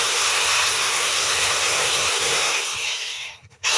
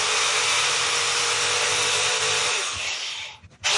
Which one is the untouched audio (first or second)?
second